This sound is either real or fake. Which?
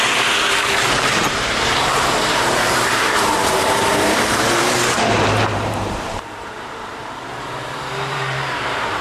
fake